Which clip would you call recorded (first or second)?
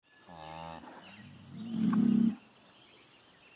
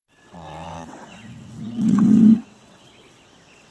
first